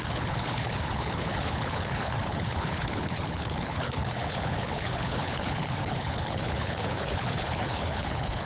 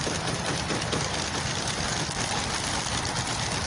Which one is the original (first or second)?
second